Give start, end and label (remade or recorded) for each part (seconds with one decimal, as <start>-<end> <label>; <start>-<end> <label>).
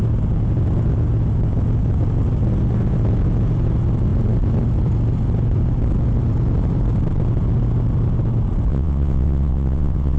0.0-8.7 recorded; 8.7-10.2 remade